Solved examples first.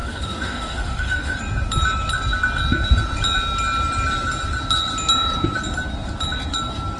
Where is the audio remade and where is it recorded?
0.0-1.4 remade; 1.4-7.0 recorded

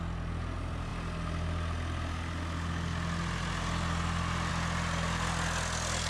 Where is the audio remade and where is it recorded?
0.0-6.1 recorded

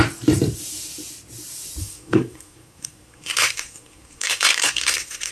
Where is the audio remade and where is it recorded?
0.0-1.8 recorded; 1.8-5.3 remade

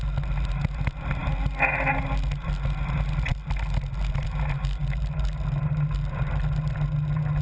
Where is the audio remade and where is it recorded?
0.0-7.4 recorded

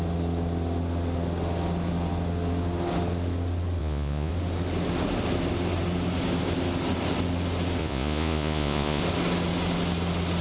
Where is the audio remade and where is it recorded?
0.0-3.8 recorded; 3.8-4.3 remade; 4.3-7.8 recorded; 7.8-9.0 remade; 9.0-10.4 recorded